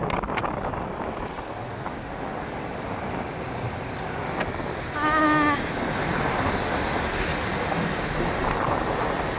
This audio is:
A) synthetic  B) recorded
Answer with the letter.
B